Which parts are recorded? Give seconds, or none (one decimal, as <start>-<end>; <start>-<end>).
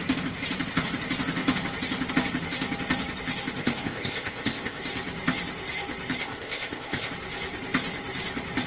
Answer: 0.0-3.6; 4.8-6.2; 7.1-8.7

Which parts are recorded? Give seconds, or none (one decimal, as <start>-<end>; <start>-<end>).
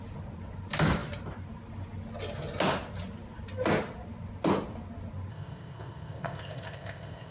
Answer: 0.0-5.3